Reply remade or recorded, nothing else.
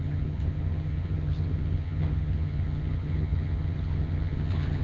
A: remade